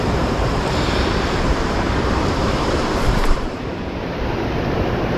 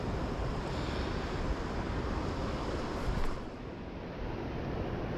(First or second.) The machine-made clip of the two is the first